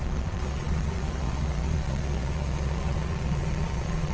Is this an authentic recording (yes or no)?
no